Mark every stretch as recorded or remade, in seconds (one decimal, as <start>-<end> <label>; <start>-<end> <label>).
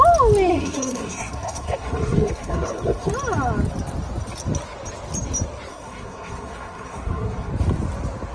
0.0-0.5 recorded; 0.5-3.1 remade; 3.1-5.7 recorded; 5.7-7.5 remade; 7.5-8.3 recorded